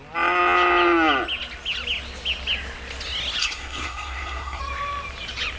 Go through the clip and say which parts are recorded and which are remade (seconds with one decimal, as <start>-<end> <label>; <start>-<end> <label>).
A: 0.0-3.4 recorded; 3.4-4.6 remade; 4.6-5.6 recorded